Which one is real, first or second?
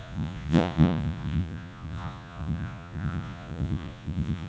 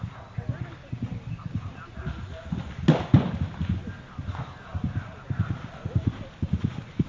second